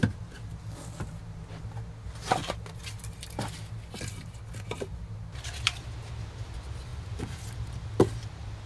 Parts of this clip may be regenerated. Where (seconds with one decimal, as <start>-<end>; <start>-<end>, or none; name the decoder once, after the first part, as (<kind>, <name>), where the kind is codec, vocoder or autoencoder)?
none